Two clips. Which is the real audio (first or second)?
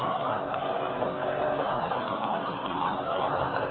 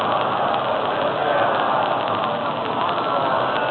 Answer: second